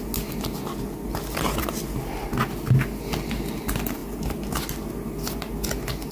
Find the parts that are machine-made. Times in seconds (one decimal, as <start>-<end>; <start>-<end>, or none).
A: none